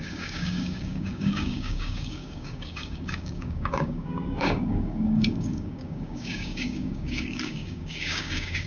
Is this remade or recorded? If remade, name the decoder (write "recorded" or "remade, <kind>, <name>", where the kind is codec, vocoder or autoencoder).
remade, codec, DAC